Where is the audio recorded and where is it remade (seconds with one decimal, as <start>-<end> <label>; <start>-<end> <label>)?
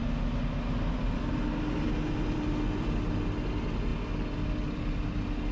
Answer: 0.0-5.5 recorded